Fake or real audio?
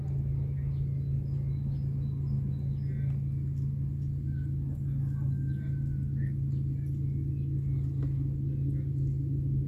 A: real